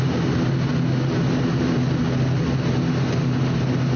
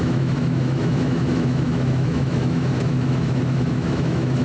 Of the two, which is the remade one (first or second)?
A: second